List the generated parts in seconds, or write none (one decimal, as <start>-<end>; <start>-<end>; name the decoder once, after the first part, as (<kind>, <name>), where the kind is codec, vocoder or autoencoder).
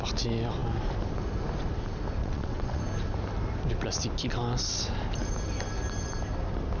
2.2-2.8 (vocoder, WaveNeXt)